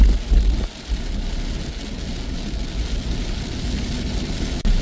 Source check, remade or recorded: recorded